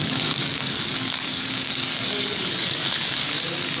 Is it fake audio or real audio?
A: fake